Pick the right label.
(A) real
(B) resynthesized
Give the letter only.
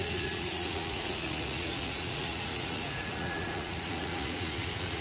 B